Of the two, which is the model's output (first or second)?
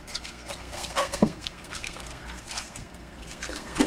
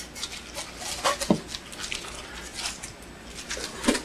first